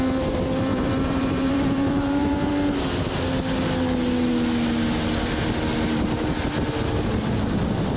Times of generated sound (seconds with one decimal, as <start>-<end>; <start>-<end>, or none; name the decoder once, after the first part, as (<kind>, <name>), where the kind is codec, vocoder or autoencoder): 0.7-2.5 (vocoder, BigVGAN v2)